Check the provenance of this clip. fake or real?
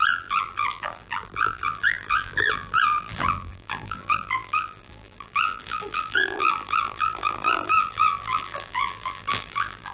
fake